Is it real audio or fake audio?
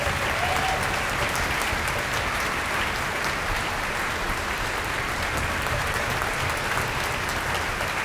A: real